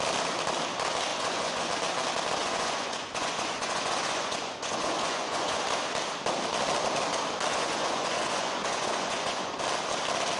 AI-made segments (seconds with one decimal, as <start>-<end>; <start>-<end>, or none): 1.1-1.7; 2.4-5.6; 7.5-9.6